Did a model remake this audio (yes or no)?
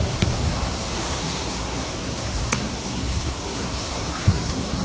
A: yes